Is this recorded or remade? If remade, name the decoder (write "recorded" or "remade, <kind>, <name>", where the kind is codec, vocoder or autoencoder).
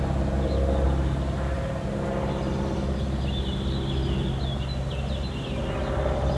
recorded